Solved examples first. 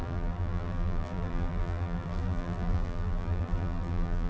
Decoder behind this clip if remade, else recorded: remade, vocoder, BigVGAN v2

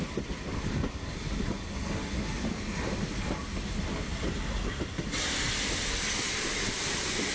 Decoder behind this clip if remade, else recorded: recorded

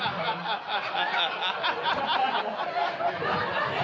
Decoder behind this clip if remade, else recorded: recorded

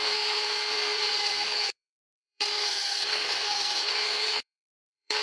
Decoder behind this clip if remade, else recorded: remade, codec, SNAC